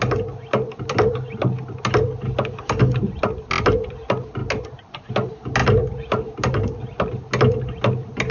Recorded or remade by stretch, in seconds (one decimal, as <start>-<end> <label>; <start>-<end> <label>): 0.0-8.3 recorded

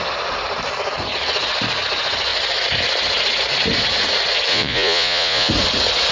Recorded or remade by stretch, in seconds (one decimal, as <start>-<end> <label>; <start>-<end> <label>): 0.0-4.5 recorded; 4.5-5.5 remade; 5.5-6.1 recorded

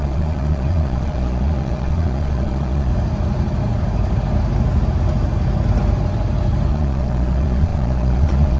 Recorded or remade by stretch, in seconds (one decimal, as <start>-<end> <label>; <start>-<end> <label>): 0.0-2.9 remade; 2.9-6.7 recorded; 6.7-8.6 remade

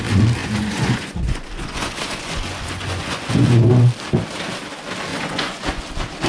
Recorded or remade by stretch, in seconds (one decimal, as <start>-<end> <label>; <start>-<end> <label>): 0.0-0.4 recorded; 0.4-3.7 remade; 3.7-5.1 recorded; 5.1-5.8 remade; 5.8-6.3 recorded

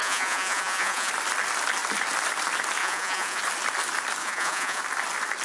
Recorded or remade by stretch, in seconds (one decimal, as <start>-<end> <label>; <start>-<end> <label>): 0.0-1.1 remade; 1.1-2.8 recorded; 2.8-3.4 remade; 3.4-4.2 recorded; 4.2-4.8 remade; 4.8-5.4 recorded